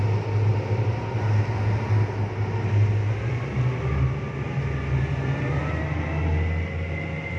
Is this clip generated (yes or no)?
no